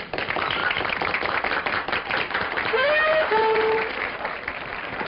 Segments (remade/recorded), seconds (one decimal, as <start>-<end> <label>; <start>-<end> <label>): 0.0-0.6 remade; 0.6-1.9 recorded; 1.9-5.1 remade

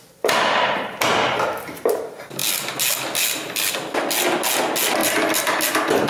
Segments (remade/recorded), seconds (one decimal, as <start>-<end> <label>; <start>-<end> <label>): 0.0-5.0 recorded; 5.0-5.6 remade; 5.6-6.1 recorded

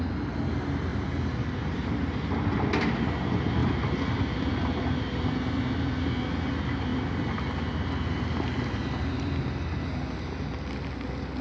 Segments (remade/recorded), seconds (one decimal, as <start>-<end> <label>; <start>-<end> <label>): 0.0-0.9 recorded; 0.9-2.4 remade; 2.4-3.6 recorded; 3.6-4.4 remade; 4.4-6.9 recorded; 6.9-9.4 remade; 9.4-11.4 recorded

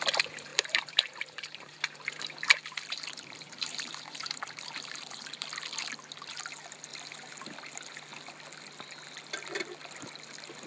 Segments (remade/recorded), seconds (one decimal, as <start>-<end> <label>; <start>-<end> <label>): 0.0-0.5 recorded; 0.5-5.5 remade; 5.5-10.7 recorded

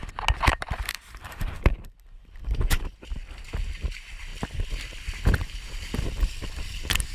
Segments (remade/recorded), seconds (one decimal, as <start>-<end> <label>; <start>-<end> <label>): 0.0-0.5 recorded; 0.5-1.9 remade; 1.9-7.1 recorded

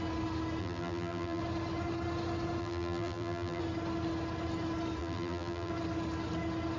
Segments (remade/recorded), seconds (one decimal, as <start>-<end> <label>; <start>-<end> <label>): 0.0-0.6 recorded; 0.6-1.4 remade; 1.4-2.6 recorded; 2.6-3.6 remade; 3.6-5.0 recorded; 5.0-5.7 remade; 5.7-6.8 recorded